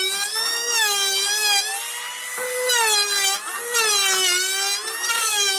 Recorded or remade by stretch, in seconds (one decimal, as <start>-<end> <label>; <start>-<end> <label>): 0.0-1.7 remade; 1.7-5.1 recorded; 5.1-5.6 remade

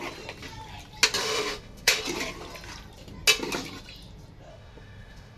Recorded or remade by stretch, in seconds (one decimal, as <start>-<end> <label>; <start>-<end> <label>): 0.0-1.2 recorded; 1.2-2.0 remade; 2.0-4.5 recorded; 4.5-5.4 remade